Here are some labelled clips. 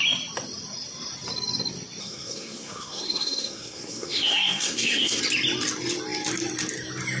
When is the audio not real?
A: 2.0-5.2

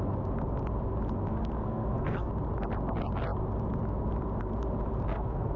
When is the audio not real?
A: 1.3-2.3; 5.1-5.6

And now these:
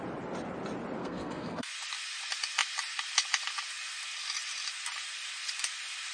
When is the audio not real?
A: 1.0-1.7

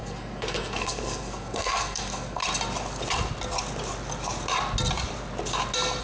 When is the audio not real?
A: 0.0-2.4